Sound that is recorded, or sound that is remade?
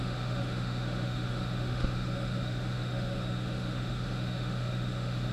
remade